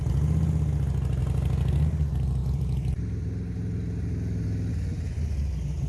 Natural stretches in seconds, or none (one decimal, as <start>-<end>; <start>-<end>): 0.0-5.9

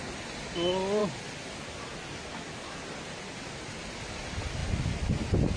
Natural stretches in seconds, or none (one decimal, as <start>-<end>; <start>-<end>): 0.0-5.6